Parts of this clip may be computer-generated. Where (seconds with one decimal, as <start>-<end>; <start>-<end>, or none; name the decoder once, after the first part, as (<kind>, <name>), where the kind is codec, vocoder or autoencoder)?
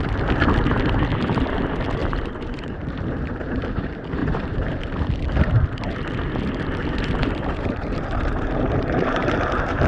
1.1-1.6 (vocoder, BigVGAN v2); 2.0-3.6; 4.2-4.8; 7.2-9.9